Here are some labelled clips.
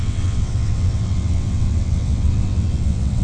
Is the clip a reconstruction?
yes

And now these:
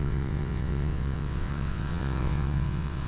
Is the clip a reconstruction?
yes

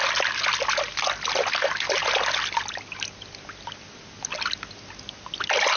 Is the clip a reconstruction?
no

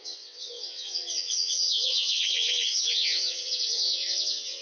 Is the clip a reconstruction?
yes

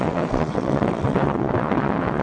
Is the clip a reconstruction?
yes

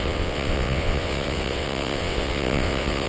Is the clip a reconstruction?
yes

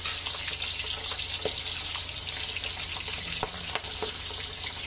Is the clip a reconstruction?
no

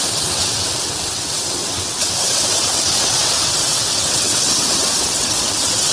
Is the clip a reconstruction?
yes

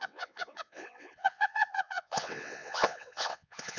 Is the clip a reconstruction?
yes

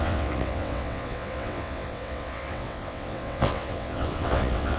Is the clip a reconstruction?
yes